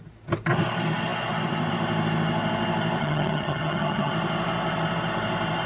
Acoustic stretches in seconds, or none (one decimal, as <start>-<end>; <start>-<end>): 0.0-3.0; 4.1-5.7